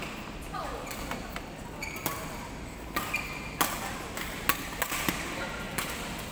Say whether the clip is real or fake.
real